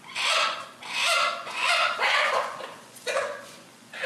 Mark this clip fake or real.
fake